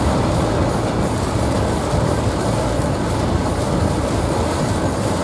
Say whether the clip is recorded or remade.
remade